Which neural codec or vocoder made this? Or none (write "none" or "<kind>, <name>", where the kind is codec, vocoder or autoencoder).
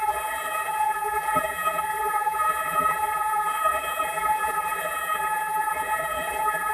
vocoder, BigVGAN v2